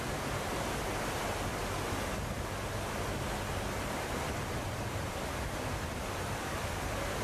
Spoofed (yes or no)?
no